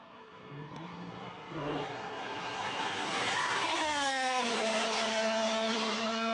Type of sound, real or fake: fake